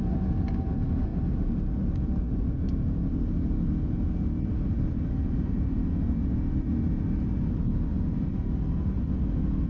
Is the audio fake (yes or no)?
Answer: no